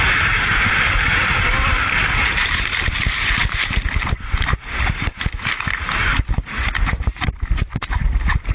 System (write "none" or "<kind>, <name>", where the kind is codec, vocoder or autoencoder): vocoder, BigVGAN v2